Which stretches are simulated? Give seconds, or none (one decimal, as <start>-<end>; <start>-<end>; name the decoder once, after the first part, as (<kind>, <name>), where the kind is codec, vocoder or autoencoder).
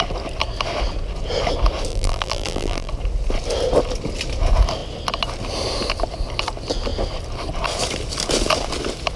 1.9-2.9 (vocoder, BigVGAN v2)